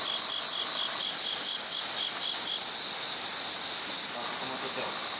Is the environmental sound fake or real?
real